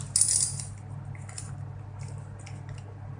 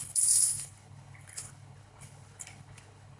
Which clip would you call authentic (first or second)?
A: first